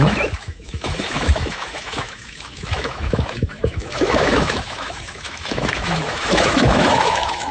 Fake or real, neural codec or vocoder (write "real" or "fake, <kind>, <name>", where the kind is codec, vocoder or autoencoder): fake, autoencoder, DAC-VAE